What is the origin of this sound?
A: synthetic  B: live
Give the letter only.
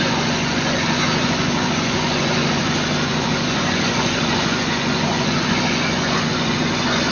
A